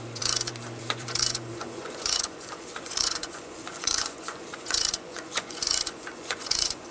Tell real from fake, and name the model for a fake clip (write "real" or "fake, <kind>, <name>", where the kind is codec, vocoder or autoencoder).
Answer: fake, vocoder, Vocos